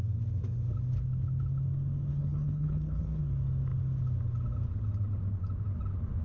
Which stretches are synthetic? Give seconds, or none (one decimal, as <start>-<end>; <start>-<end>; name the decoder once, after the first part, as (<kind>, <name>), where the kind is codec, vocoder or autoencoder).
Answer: 2.1-3.2 (codec, HILCodec)